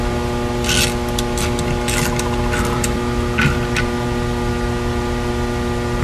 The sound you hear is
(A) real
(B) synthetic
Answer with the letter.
A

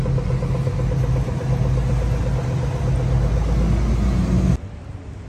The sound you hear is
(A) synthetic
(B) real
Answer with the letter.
B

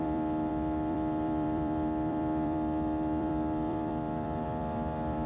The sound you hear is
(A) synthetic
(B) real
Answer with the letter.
A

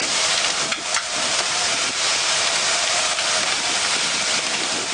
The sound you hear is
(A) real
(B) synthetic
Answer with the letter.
B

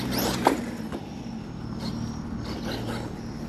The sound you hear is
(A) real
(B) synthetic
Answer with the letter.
A